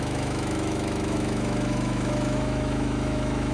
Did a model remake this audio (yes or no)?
yes